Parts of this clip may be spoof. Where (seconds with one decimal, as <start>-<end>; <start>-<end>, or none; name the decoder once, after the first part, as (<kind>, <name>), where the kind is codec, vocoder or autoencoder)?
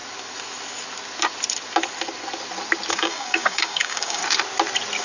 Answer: 2.9-4.2 (codec, DAC)